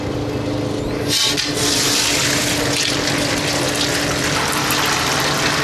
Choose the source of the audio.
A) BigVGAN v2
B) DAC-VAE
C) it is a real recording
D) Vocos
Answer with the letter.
C